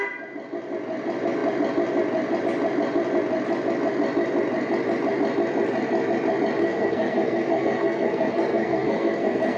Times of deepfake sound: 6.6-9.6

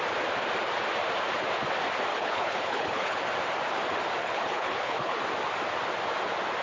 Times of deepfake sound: 2.1-3.2; 4.2-5.2

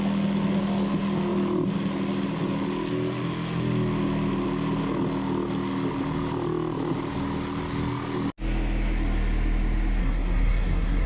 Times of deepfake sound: 10.0-11.1